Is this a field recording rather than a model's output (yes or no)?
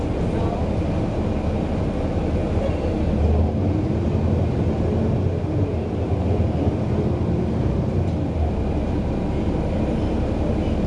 yes